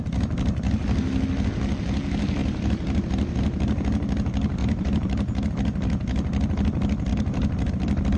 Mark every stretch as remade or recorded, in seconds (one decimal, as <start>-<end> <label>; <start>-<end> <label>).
0.0-2.4 recorded; 2.4-3.0 remade; 3.0-4.6 recorded; 4.6-5.5 remade; 5.5-7.1 recorded; 7.1-7.7 remade; 7.7-8.2 recorded